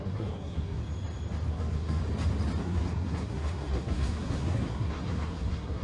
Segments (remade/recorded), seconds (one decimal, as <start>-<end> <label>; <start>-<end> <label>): 0.0-0.8 remade; 0.8-1.5 recorded; 1.5-2.0 remade; 2.0-2.6 recorded; 2.6-5.8 remade